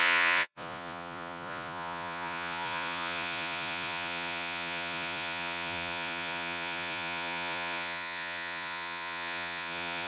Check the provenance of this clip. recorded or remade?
remade